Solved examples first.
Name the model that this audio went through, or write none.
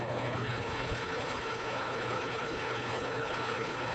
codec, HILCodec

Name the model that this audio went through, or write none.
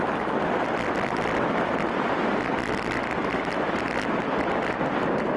none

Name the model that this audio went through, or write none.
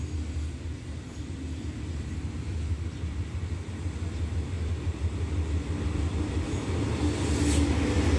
none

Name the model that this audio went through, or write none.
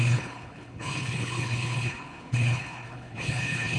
codec, HILCodec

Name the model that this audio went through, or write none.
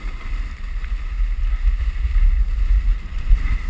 none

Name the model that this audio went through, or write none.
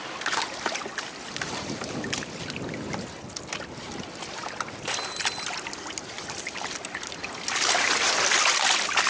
none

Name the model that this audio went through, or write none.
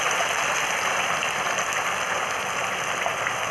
none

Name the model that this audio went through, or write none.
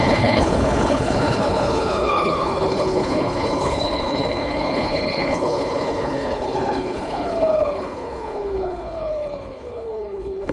codec, HILCodec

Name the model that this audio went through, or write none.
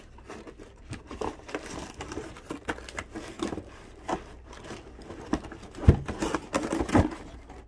none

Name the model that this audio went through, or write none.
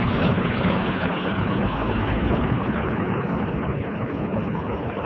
codec, HILCodec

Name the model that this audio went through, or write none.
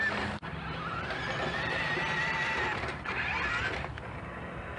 none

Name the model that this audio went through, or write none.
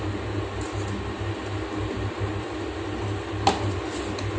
none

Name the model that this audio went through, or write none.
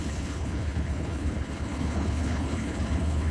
codec, HILCodec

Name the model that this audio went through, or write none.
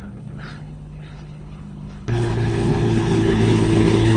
codec, HILCodec